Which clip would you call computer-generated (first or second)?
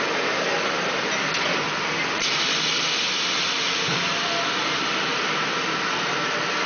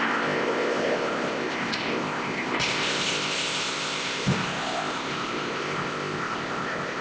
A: second